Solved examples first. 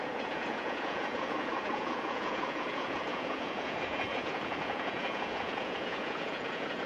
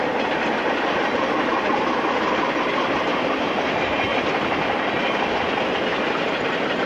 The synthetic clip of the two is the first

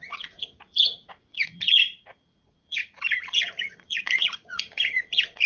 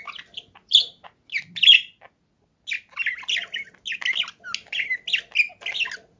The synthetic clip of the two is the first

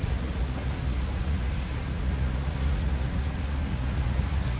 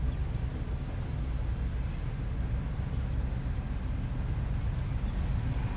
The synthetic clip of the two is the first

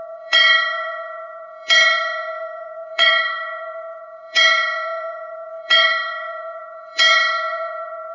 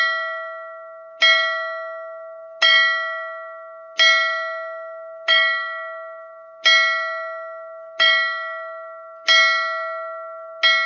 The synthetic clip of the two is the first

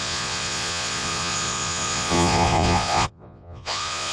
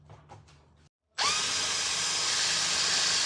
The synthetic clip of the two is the first